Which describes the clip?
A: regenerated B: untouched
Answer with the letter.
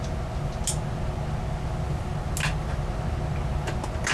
B